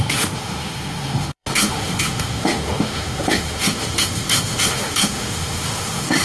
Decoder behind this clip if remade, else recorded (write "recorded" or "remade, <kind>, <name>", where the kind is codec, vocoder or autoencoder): remade, autoencoder, DAC-VAE